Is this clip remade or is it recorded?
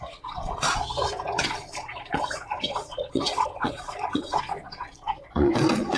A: remade